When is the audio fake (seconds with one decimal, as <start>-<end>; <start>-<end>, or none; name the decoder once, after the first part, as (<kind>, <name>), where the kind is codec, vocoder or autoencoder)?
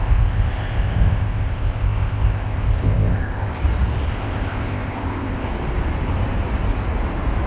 0.0-3.6 (codec, ZipCodec); 4.1-5.5